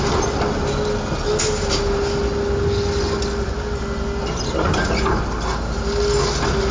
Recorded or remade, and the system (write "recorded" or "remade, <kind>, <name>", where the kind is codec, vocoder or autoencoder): recorded